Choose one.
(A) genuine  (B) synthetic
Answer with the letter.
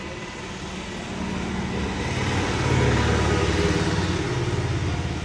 A